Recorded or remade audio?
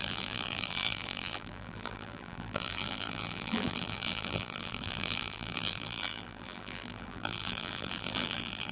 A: remade